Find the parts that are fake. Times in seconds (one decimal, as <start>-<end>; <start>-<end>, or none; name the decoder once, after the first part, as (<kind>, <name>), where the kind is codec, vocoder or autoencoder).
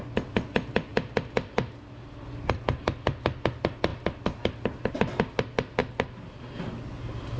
none